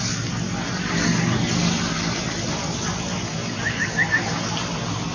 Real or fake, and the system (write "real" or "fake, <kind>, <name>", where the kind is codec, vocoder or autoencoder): real